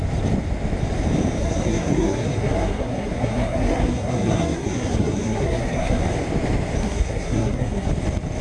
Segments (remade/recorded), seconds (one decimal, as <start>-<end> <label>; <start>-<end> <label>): 0.0-1.4 recorded; 1.4-6.0 remade; 6.0-6.8 recorded; 6.8-7.9 remade; 7.9-8.4 recorded